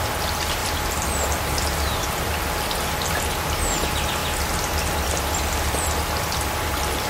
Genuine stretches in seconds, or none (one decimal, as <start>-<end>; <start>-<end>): 0.0-0.6; 2.2-7.1